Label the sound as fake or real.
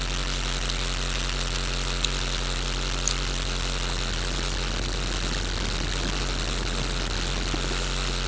real